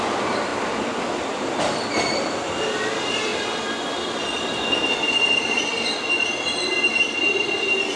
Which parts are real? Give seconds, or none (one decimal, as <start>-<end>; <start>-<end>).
0.5-1.0; 3.3-3.9; 5.7-6.9